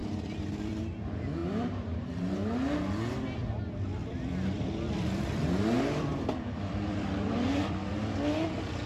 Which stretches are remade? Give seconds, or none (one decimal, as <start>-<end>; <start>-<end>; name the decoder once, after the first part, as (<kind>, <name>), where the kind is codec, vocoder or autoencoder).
0.0-0.8 (vocoder, BigVGAN v2); 1.4-2.1; 4.0-5.5; 6.1-7.9